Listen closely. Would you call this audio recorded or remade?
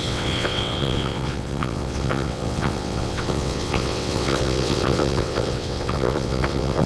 remade